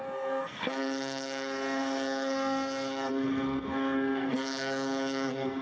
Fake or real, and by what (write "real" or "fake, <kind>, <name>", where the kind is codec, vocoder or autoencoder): fake, codec, SNAC